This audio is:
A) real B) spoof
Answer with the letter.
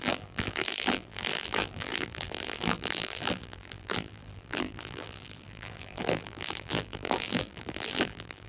B